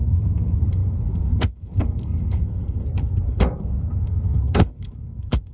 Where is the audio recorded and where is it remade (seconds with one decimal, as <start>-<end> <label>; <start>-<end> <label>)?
0.0-5.5 remade